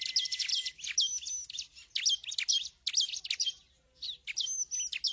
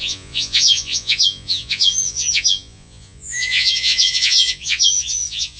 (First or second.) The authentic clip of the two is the first